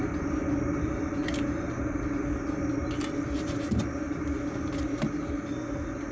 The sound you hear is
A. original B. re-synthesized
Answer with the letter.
A